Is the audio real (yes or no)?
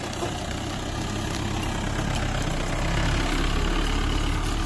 yes